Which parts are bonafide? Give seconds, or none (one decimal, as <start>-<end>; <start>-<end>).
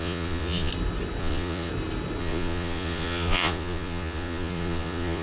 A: 0.7-1.2; 1.7-2.2